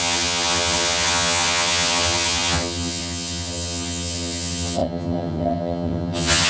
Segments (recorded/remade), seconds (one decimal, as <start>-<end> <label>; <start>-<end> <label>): 0.0-6.5 remade